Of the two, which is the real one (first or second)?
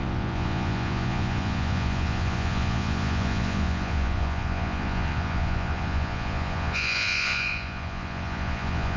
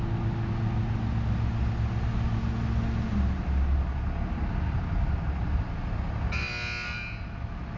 second